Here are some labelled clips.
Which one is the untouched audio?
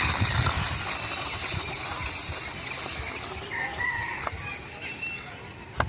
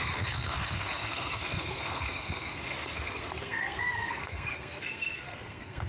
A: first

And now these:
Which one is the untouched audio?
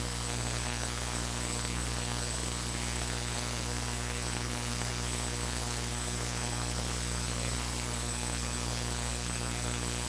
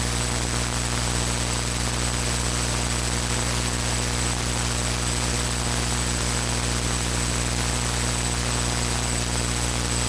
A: second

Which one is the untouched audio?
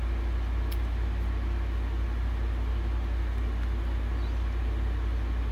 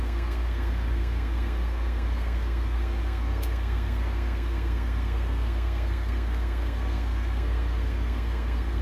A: first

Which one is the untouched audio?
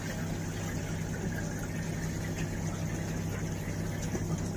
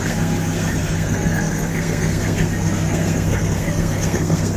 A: first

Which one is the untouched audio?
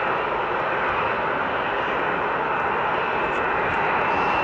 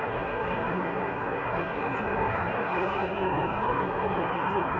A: first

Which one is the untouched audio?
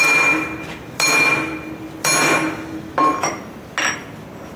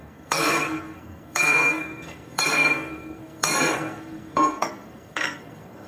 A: first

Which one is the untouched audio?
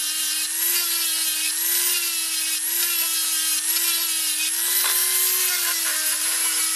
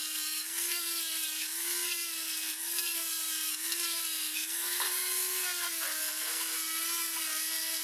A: first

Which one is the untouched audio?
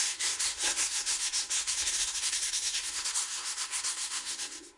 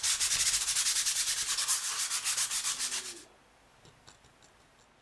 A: second